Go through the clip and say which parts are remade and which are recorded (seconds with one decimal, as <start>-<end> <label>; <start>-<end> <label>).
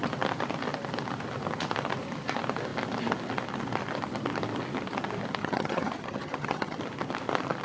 0.0-5.4 recorded; 5.4-6.8 remade; 6.8-7.6 recorded